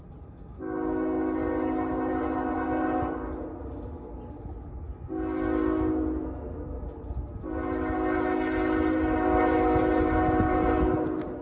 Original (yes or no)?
yes